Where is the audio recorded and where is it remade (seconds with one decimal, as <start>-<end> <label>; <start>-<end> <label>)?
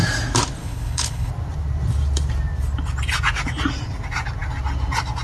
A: 0.0-0.6 recorded; 0.6-1.3 remade; 1.3-5.2 recorded